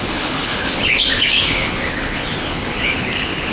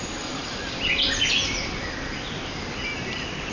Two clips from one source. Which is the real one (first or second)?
second